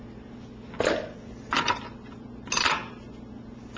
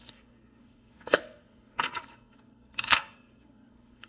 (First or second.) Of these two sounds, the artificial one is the second